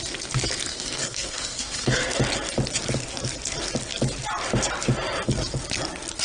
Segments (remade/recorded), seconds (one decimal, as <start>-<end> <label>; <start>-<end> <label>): 0.0-0.7 recorded; 0.7-2.2 remade; 2.2-6.2 recorded